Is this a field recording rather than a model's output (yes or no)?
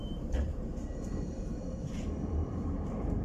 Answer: no